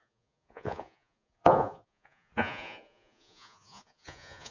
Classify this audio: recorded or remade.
remade